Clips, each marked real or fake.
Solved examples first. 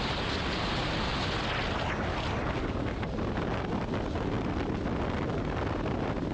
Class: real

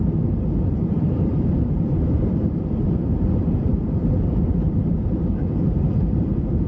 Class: fake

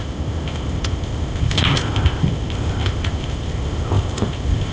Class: fake